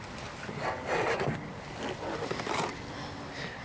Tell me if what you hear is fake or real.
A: real